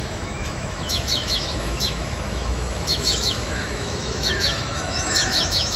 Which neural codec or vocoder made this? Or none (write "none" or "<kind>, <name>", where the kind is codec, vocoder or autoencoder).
autoencoder, DAC-VAE